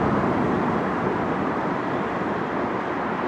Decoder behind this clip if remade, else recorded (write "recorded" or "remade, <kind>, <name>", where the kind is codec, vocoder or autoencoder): remade, vocoder, BigVGAN v2